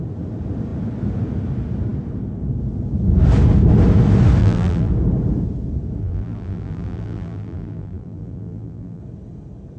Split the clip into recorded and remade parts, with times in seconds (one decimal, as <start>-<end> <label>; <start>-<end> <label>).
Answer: 0.0-4.4 recorded; 4.4-4.9 remade; 4.9-6.0 recorded; 6.0-9.0 remade; 9.0-9.8 recorded